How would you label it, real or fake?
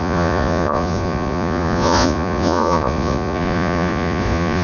fake